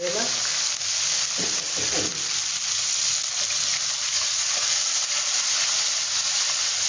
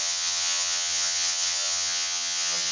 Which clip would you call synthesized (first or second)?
second